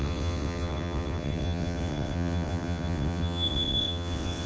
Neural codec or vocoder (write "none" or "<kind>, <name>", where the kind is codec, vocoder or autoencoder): vocoder, WaveNeXt